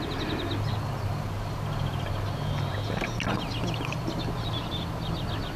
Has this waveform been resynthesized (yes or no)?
no